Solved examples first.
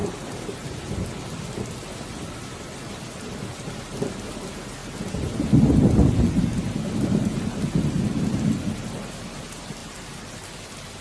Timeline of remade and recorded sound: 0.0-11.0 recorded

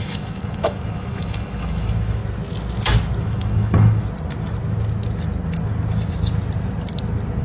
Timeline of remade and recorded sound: 0.0-2.2 remade; 2.2-3.2 recorded; 3.2-4.0 remade; 4.0-7.4 recorded

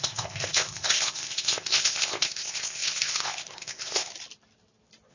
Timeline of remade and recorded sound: 0.0-4.1 remade; 4.1-5.1 recorded

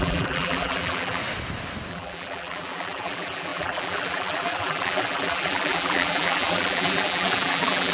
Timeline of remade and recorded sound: 0.0-1.2 remade; 1.2-1.9 recorded; 1.9-7.9 remade

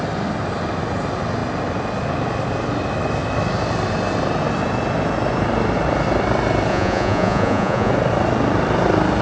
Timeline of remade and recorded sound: 0.0-6.7 recorded; 6.7-7.9 remade; 7.9-9.2 recorded

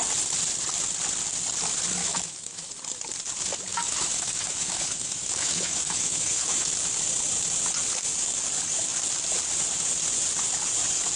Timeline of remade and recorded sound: 0.0-2.0 recorded; 2.0-2.7 remade; 2.7-3.7 recorded; 3.7-6.7 remade; 6.7-11.2 recorded

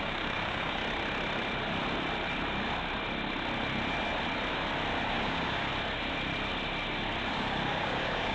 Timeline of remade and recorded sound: 0.0-0.8 remade; 0.8-5.1 recorded; 5.1-5.7 remade; 5.7-7.3 recorded; 7.3-8.3 remade

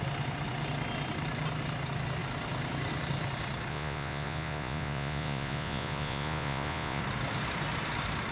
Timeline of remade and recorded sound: 0.0-3.7 recorded; 3.7-7.0 remade; 7.0-8.3 recorded